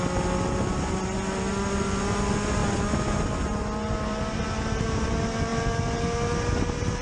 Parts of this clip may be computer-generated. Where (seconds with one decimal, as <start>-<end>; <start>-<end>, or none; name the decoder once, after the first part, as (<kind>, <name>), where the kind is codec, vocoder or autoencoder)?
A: none